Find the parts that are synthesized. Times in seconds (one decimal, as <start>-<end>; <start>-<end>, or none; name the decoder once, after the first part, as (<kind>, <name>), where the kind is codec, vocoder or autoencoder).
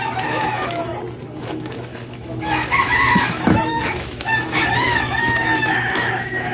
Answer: 0.0-0.9 (autoencoder, DAC-VAE); 1.4-6.5